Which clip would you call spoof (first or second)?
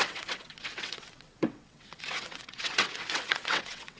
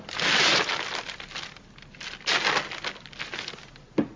first